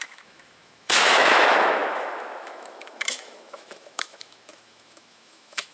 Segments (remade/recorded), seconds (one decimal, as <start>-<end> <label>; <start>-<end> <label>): 0.0-5.7 remade